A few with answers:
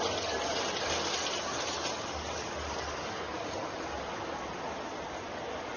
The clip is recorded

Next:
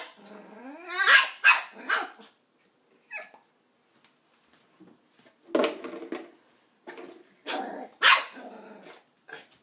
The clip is recorded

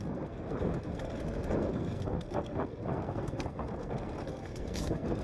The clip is remade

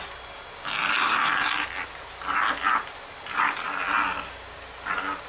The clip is recorded